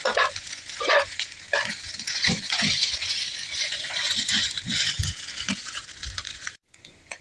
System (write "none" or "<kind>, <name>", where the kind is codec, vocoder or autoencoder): vocoder, Vocos